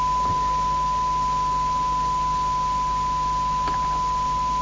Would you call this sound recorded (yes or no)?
yes